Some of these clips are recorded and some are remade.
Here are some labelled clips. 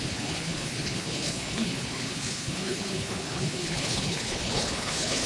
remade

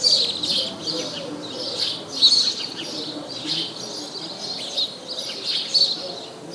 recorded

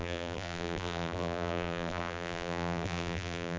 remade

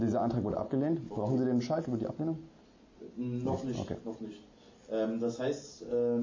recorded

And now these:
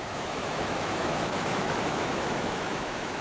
remade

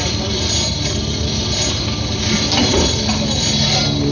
recorded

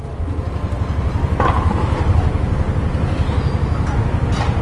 recorded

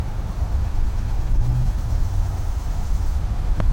remade